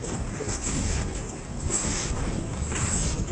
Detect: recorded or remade remade